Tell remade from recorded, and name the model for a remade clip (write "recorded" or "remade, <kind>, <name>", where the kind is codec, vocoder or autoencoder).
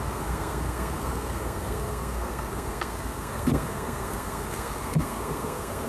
remade, codec, SNAC